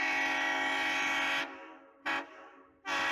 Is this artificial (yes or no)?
no